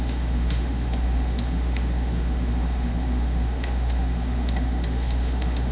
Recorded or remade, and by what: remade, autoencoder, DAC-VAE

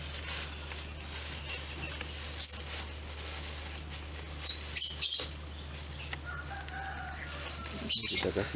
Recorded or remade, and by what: recorded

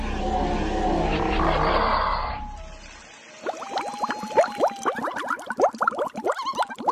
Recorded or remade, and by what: recorded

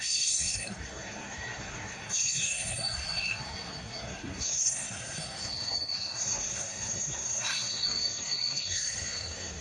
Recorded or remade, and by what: remade, codec, SNAC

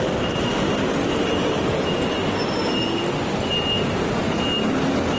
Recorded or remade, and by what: recorded